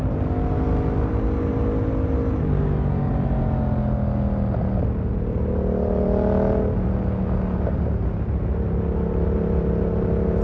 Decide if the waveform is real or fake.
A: real